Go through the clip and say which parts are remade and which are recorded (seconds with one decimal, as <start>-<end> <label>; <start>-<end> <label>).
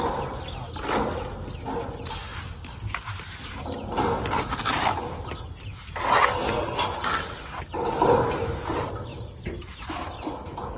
0.0-9.1 recorded; 9.1-10.3 remade; 10.3-10.8 recorded